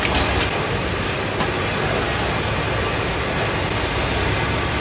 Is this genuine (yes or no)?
yes